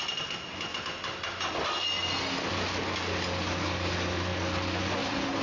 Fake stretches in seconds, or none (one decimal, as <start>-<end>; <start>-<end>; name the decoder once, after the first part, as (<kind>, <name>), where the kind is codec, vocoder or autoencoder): none